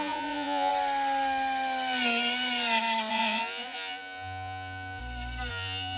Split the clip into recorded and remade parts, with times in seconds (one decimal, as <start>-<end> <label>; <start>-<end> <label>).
0.0-0.7 remade; 0.7-3.1 recorded; 3.1-5.0 remade; 5.0-5.5 recorded; 5.5-6.0 remade